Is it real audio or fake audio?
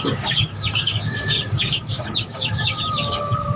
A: fake